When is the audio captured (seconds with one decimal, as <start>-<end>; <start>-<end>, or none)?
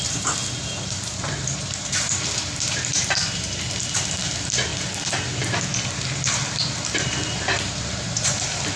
4.7-5.9